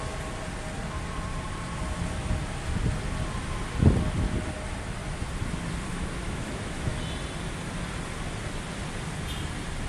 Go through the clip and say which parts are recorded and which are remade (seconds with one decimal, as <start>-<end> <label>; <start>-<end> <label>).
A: 0.0-5.9 recorded; 5.9-7.0 remade; 7.0-9.9 recorded